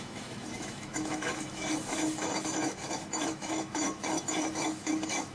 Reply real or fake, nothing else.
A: fake